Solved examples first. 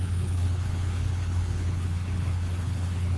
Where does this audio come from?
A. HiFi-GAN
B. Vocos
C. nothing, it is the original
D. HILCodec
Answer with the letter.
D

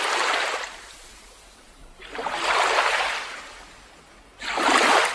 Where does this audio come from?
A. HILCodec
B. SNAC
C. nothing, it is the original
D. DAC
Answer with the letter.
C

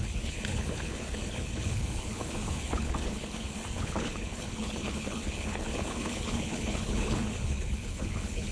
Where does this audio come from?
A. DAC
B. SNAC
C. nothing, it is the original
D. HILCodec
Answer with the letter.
D